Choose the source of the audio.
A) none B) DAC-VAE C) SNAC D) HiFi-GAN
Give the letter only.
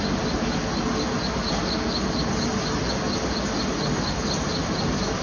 A